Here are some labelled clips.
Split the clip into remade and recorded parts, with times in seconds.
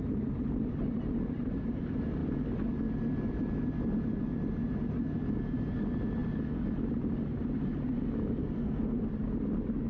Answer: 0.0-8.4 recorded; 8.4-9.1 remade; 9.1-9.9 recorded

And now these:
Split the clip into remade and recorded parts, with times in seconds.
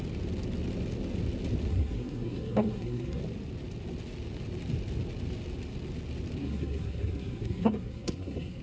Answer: 0.0-1.7 recorded; 1.7-3.2 remade; 3.2-6.4 recorded; 6.4-8.6 remade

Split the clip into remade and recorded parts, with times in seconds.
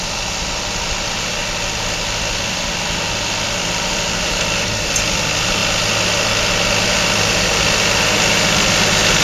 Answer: 0.0-9.2 recorded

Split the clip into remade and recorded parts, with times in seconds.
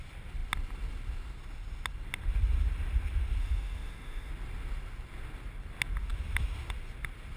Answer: 0.0-3.4 recorded; 3.4-4.3 remade; 4.3-7.4 recorded